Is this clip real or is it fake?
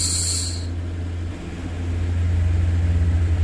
real